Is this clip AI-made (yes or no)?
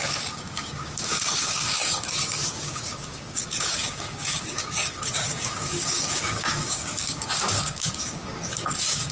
yes